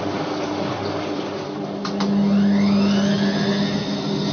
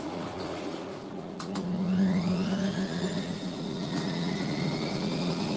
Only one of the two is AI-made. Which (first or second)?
second